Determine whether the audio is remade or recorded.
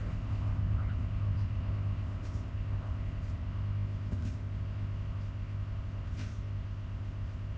remade